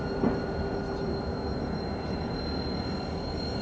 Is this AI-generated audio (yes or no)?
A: no